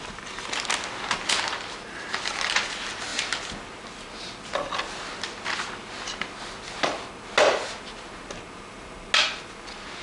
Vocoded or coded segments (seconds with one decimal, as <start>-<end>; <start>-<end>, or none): none

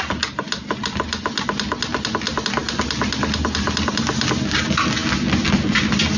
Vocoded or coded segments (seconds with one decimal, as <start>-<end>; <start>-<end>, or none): none

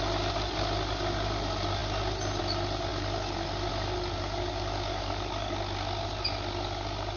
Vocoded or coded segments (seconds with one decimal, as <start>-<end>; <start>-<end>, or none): 4.9-5.6

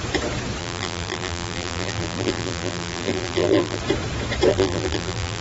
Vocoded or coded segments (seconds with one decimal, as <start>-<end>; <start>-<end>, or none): 0.6-3.8; 4.5-5.4